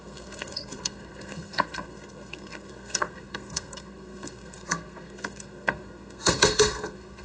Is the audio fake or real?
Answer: fake